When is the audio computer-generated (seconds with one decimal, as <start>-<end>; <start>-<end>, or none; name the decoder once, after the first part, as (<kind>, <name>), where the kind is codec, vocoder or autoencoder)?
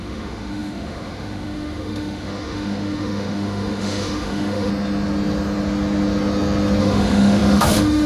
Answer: 0.0-4.7 (autoencoder, DAC-VAE); 6.8-8.1